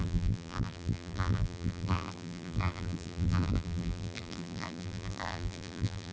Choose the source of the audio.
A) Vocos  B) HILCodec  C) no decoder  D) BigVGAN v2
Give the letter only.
D